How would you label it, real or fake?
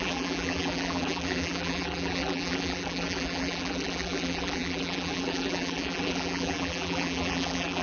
fake